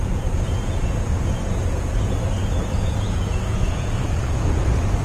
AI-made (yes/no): yes